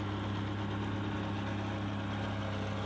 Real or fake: real